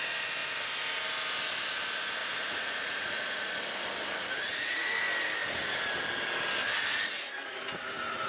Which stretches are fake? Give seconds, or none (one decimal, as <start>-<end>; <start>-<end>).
2.2-3.5; 4.5-5.0

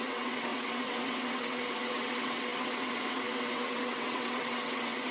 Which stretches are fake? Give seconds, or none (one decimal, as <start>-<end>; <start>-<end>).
0.0-5.1

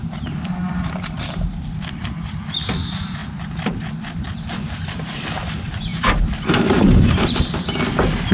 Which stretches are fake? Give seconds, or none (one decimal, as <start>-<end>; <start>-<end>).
5.9-7.3

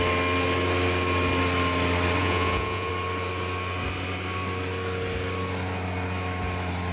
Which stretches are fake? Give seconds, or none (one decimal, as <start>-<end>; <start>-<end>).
2.2-2.9

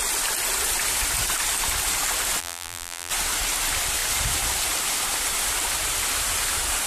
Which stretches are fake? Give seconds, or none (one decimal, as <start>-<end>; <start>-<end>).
2.4-3.1

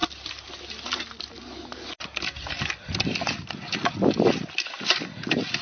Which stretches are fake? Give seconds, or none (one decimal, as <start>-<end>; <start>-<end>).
none

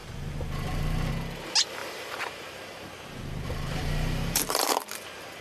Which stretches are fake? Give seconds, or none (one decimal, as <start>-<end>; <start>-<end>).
0.0-1.1; 1.8-5.0

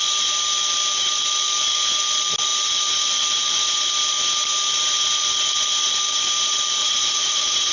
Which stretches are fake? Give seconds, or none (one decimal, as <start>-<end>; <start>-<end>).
6.8-7.7